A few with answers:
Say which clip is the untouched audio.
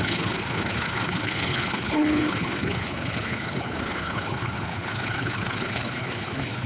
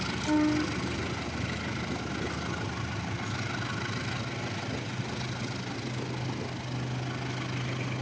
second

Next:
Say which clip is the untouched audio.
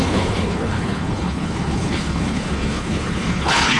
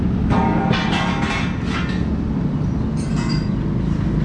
second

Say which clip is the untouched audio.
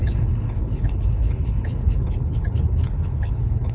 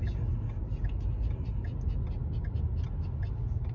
second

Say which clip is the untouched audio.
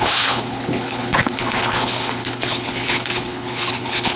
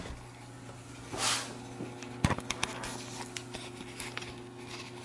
second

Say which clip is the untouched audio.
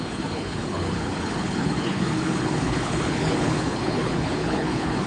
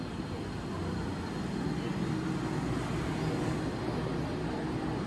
second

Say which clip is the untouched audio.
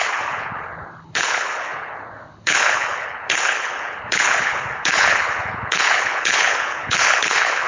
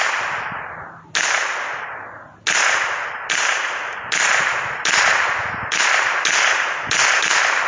second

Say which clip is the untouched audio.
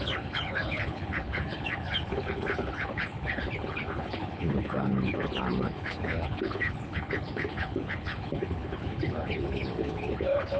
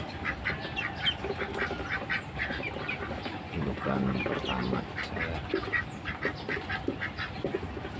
second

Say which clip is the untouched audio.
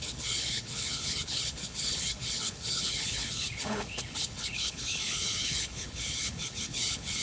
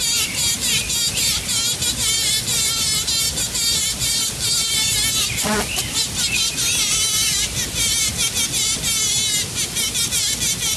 second